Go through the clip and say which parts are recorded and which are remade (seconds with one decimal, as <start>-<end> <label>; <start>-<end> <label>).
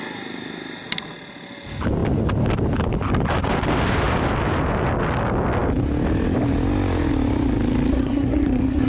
0.0-7.9 recorded; 7.9-8.9 remade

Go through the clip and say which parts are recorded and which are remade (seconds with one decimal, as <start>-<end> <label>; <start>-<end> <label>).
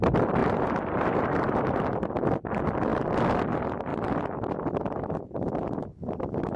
0.0-0.4 recorded; 0.4-2.1 remade; 2.1-6.6 recorded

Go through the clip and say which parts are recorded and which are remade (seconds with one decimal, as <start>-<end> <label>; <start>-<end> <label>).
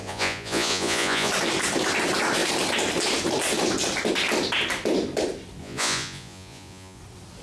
0.0-1.3 remade; 1.3-5.6 recorded; 5.6-7.0 remade; 7.0-7.4 recorded